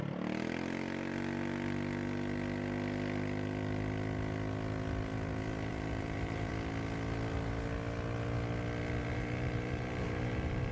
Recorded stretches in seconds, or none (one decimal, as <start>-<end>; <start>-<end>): 0.0-5.7; 6.5-9.0